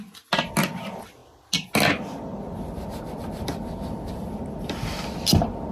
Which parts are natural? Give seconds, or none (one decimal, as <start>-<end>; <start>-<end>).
0.0-5.7